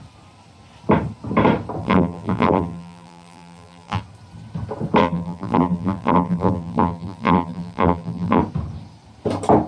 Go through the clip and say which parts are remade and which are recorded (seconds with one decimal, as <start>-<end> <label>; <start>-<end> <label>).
0.0-1.8 recorded; 1.8-4.0 remade; 4.0-5.0 recorded; 5.0-8.4 remade; 8.4-9.7 recorded